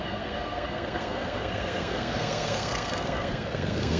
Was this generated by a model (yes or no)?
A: yes